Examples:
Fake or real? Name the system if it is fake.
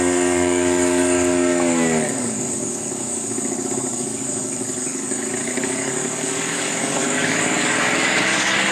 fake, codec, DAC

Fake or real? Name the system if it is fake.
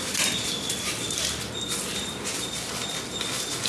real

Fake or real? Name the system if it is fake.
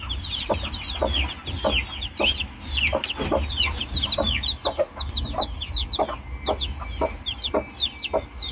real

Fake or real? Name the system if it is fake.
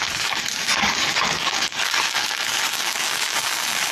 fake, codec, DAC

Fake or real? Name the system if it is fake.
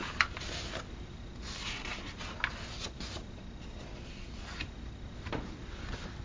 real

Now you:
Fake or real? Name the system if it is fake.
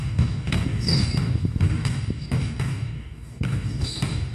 fake, codec, DAC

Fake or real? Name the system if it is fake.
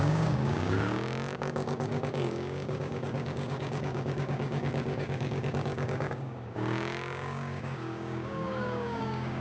fake, codec, DAC